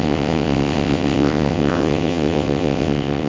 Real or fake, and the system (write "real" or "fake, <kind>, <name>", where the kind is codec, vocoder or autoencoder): fake, vocoder, WaveNeXt